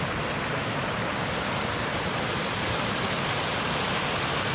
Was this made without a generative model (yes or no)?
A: yes